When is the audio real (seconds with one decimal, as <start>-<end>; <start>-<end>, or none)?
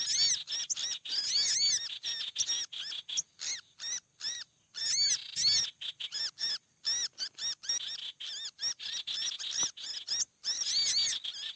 0.0-11.6